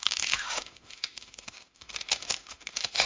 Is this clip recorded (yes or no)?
no